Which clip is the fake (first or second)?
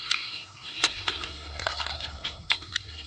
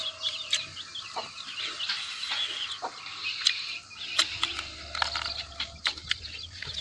first